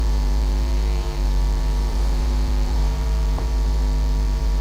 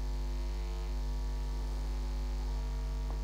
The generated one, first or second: first